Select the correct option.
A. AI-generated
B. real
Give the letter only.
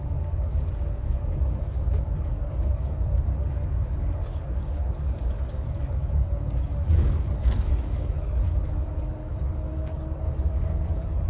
A